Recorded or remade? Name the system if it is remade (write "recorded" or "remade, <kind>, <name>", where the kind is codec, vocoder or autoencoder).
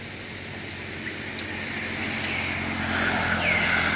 recorded